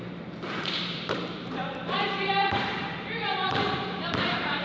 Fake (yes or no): yes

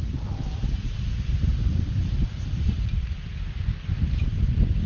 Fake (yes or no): no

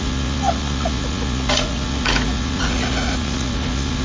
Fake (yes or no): yes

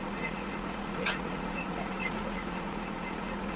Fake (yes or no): yes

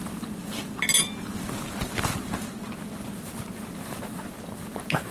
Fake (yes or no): no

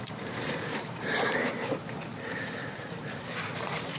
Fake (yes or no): yes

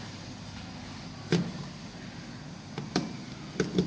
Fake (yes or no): yes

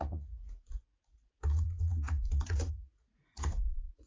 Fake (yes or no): yes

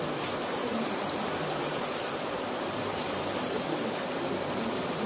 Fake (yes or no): yes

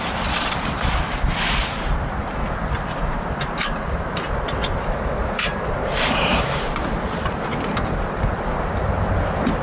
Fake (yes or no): no